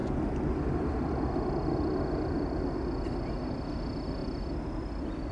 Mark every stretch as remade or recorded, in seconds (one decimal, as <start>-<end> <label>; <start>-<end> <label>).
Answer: 0.0-5.3 recorded

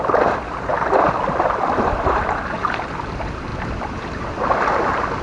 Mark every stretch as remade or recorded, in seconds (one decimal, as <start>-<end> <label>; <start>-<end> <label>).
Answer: 0.0-5.2 remade

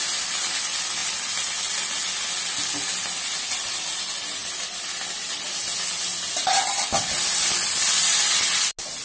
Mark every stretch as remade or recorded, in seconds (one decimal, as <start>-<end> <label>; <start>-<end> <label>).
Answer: 0.0-9.0 recorded

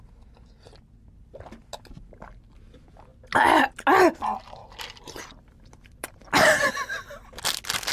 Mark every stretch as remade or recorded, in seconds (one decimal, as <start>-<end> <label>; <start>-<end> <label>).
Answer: 0.0-4.6 recorded; 4.6-6.7 remade; 6.7-7.9 recorded

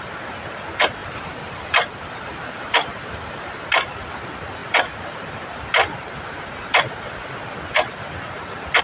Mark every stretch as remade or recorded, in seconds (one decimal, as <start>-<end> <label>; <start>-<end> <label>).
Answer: 0.0-1.0 recorded; 1.0-3.6 remade; 3.6-8.8 recorded